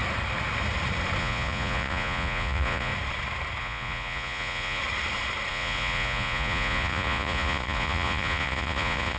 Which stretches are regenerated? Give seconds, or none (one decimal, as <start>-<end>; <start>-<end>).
1.2-2.9; 3.6-4.8; 5.5-9.2